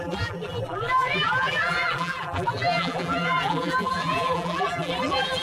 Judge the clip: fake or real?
fake